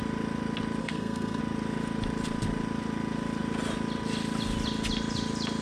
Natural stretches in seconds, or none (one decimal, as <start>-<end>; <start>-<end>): 0.0-0.8; 1.4-5.6